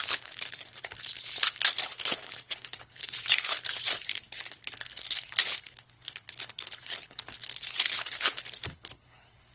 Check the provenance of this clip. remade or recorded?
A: remade